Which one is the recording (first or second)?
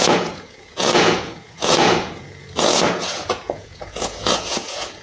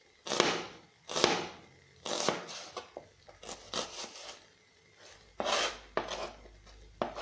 second